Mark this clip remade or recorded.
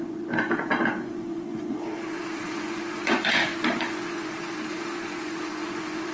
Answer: remade